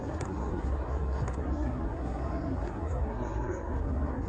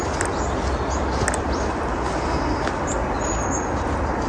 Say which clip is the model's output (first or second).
first